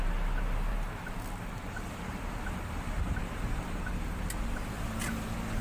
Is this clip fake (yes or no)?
no